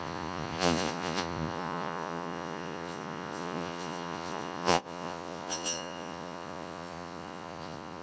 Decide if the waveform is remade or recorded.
remade